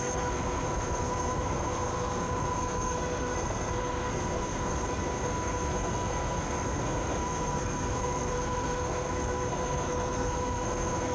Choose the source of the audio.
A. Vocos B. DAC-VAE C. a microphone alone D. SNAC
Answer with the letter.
D